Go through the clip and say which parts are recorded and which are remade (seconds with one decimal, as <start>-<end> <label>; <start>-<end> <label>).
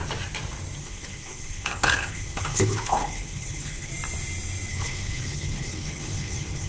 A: 0.0-0.8 recorded; 0.8-3.9 remade; 3.9-4.7 recorded; 4.7-6.7 remade